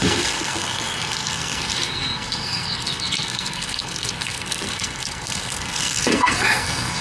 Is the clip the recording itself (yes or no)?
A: no